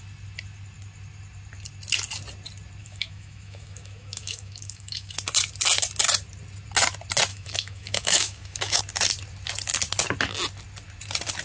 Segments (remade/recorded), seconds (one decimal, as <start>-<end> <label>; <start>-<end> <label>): 0.0-2.8 recorded; 2.8-5.1 remade; 5.1-7.3 recorded; 7.3-8.8 remade; 8.8-11.4 recorded